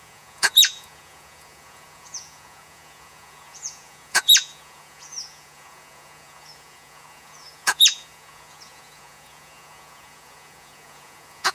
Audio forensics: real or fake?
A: fake